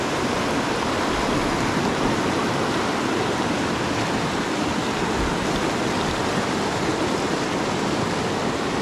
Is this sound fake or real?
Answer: real